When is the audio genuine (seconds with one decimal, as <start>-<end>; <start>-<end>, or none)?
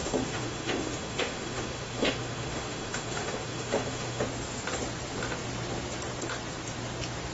4.2-7.3